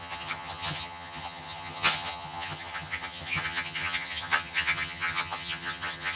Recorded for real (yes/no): no